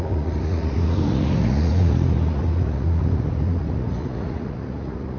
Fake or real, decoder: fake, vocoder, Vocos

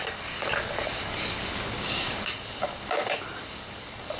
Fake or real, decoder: fake, codec, DAC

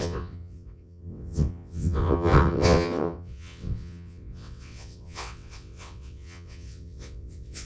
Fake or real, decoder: fake, vocoder, WaveNeXt